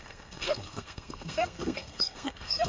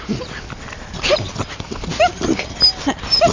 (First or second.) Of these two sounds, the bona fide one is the second